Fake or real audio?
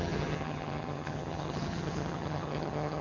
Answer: fake